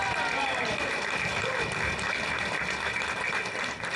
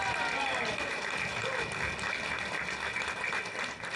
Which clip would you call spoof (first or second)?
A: first